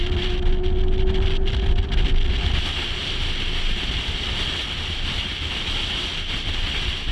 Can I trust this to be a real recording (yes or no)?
yes